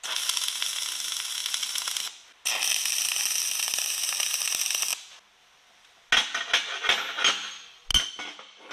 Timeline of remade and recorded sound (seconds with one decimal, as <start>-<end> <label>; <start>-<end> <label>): 0.0-8.7 recorded